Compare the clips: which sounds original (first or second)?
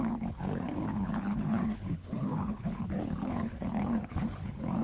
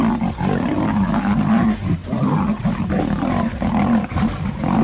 second